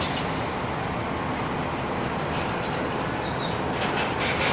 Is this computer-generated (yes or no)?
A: no